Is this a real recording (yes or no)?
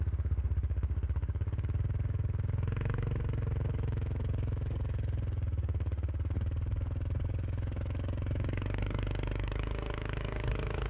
no